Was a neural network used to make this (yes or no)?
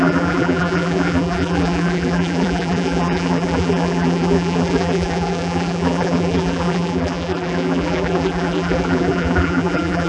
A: yes